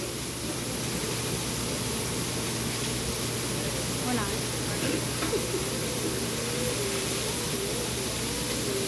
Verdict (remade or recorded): recorded